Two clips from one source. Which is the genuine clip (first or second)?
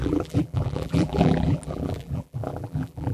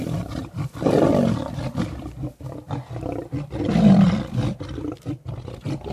second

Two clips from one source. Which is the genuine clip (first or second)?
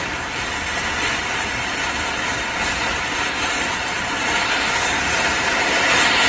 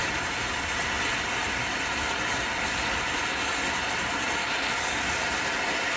second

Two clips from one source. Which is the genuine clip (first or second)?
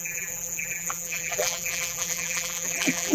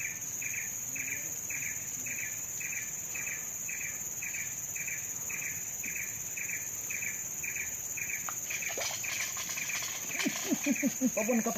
second